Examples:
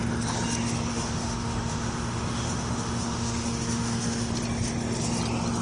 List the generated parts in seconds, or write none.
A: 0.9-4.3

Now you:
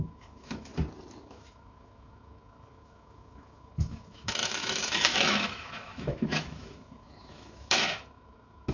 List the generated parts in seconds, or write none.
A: 0.0-0.7; 1.2-8.7

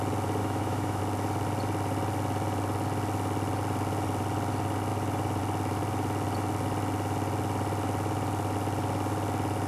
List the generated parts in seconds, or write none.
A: 0.4-1.0

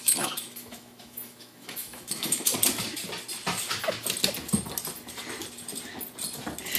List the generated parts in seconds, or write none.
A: 0.0-2.5

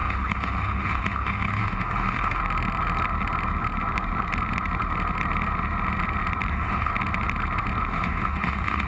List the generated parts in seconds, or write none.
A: 0.0-2.4; 6.5-6.9; 7.9-8.9

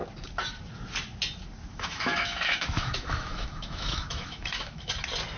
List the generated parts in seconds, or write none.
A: 1.7-4.9

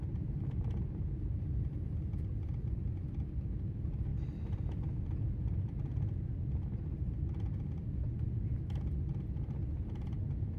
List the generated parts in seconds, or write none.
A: none